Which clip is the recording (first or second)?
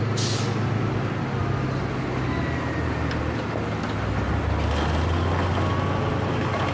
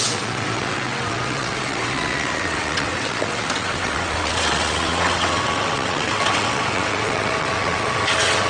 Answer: first